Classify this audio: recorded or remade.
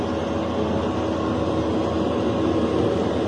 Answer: recorded